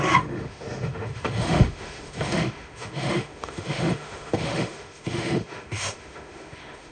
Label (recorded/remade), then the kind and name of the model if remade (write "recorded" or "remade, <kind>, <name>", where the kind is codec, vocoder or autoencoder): remade, autoencoder, DAC-VAE